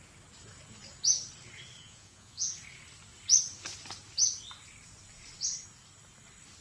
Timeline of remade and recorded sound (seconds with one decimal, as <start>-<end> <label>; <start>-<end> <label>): 0.0-1.8 recorded; 1.8-2.5 remade; 2.5-6.6 recorded